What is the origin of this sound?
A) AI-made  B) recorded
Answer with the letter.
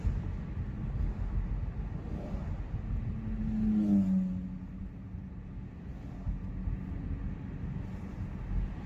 B